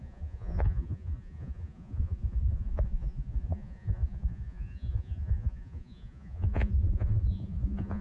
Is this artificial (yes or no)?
yes